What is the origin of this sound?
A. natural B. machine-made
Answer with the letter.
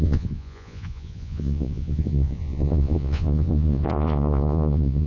B